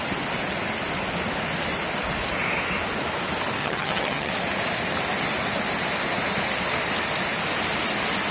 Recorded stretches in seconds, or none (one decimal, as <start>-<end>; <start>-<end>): 0.0-3.6; 4.3-8.3